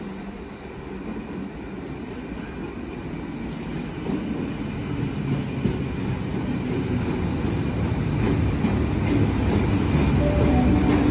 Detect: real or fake real